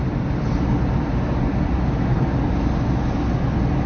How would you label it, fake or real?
real